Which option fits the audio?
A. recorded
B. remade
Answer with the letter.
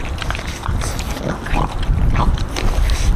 A